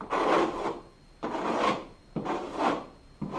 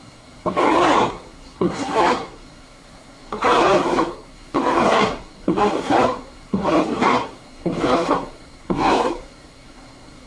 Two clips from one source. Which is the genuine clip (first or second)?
first